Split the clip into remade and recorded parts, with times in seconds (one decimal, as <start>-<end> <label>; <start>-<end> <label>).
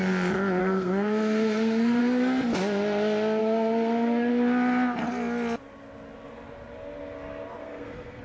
0.0-0.6 recorded; 0.6-2.0 remade; 2.0-3.4 recorded; 3.4-4.3 remade; 4.3-7.6 recorded; 7.6-8.2 remade